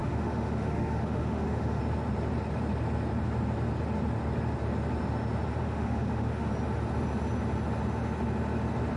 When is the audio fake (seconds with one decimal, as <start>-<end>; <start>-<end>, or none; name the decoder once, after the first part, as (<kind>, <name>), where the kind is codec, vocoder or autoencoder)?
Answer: 0.0-1.8 (autoencoder, DAC-VAE); 5.6-6.5